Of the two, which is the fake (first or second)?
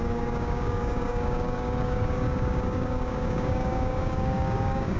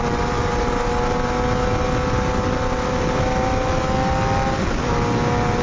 first